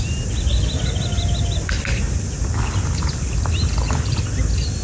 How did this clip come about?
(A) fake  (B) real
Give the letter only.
B